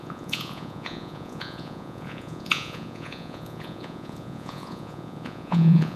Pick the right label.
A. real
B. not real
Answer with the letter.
B